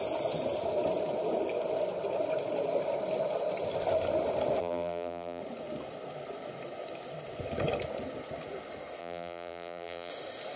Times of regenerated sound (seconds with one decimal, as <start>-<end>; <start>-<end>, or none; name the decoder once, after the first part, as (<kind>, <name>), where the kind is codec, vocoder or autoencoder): 4.6-5.4 (vocoder, BigVGAN v2); 9.0-10.1